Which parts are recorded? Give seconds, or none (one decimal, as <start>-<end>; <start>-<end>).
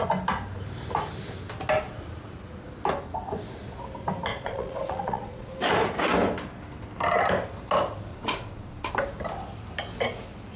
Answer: 0.0-4.3; 5.5-8.1; 8.9-10.6